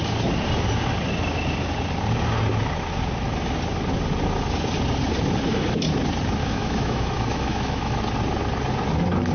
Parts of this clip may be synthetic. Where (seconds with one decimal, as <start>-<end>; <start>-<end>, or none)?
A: 6.4-8.0